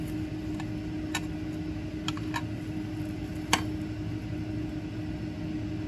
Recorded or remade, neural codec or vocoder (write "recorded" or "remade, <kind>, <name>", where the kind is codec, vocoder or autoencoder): recorded